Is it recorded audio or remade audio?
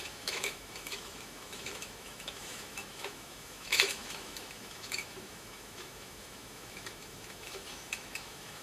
remade